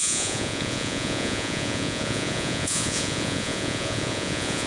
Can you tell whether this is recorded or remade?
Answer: remade